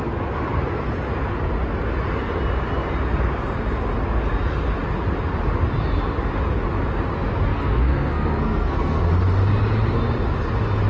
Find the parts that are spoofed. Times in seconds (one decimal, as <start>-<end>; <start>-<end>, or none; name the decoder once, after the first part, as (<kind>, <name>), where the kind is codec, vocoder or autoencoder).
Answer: 7.5-9.1 (codec, SNAC)